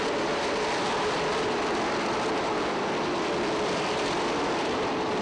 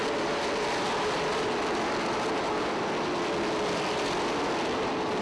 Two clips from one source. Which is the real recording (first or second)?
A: second